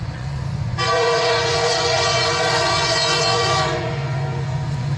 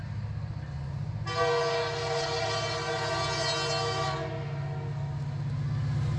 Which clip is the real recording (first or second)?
second